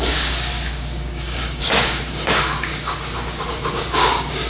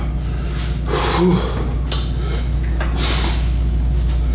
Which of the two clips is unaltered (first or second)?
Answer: second